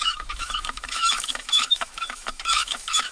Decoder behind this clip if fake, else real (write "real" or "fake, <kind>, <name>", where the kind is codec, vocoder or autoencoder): fake, autoencoder, DAC-VAE